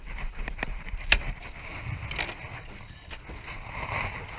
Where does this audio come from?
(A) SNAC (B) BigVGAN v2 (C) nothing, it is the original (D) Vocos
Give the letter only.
C